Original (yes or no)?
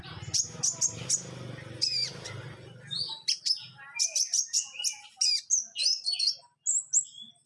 yes